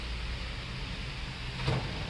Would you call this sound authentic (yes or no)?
yes